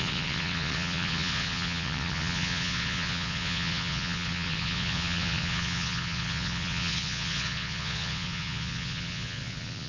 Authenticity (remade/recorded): remade